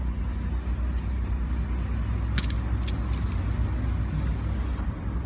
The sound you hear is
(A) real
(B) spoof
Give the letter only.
A